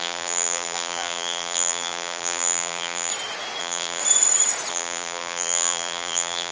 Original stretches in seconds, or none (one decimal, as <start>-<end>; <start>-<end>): 3.1-3.6; 4.0-4.7